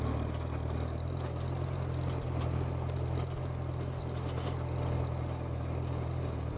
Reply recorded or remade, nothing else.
recorded